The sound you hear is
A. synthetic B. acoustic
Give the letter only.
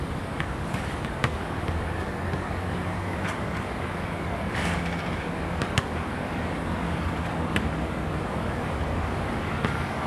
A